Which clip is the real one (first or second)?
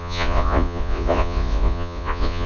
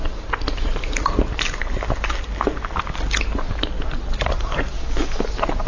second